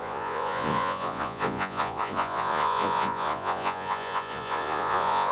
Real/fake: fake